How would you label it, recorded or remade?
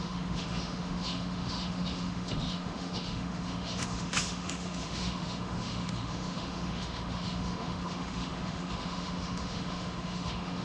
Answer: remade